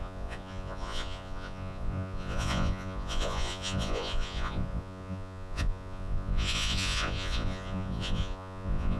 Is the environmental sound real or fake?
fake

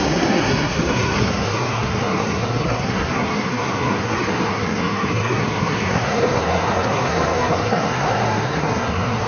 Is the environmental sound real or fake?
fake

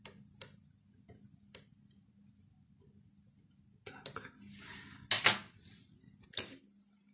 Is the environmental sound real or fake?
real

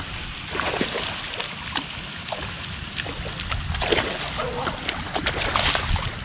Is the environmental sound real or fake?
real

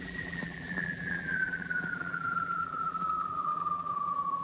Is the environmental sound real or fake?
fake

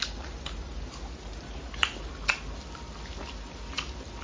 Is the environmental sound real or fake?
real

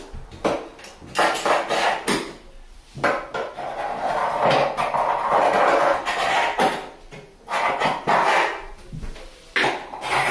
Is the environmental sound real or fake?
real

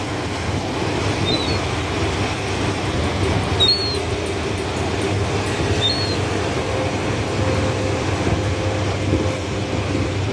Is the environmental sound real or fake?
real